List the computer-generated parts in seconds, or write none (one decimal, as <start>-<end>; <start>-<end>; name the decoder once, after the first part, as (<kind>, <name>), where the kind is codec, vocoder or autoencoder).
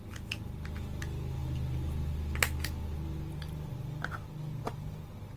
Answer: none